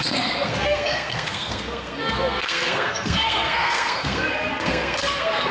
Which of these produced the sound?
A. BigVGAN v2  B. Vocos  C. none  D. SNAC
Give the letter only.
D